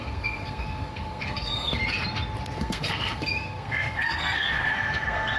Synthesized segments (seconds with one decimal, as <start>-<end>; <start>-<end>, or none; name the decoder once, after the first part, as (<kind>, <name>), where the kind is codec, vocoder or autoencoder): 0.0-1.8 (codec, SNAC); 2.6-5.4